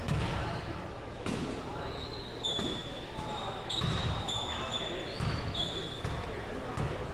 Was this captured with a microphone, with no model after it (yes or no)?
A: no